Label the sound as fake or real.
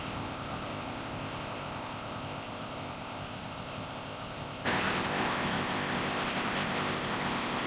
fake